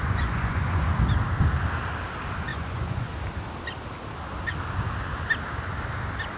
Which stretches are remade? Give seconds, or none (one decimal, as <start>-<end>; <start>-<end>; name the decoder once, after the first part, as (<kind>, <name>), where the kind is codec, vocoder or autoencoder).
0.0-0.9 (vocoder, Vocos); 2.5-3.1